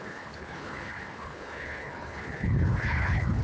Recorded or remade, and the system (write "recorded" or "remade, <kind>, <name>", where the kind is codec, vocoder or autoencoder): remade, codec, HILCodec